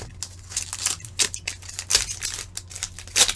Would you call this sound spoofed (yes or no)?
no